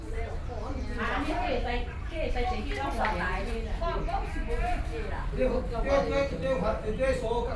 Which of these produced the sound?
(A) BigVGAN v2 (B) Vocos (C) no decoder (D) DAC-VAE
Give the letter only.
C